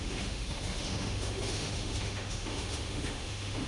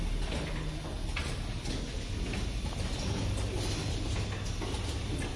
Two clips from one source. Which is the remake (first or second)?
first